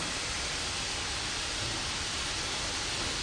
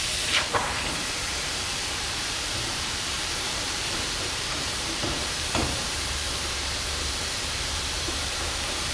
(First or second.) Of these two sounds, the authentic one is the first